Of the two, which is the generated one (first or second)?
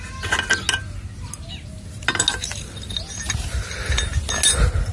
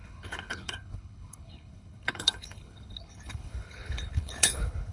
second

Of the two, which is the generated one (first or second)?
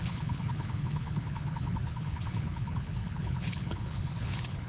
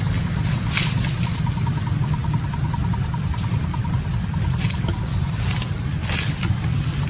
first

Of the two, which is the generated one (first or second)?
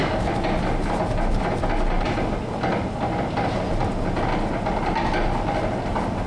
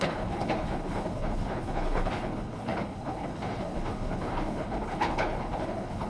second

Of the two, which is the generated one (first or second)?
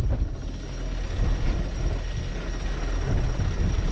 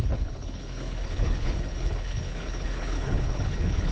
second